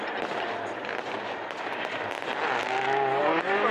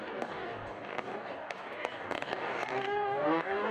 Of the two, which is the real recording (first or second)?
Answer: first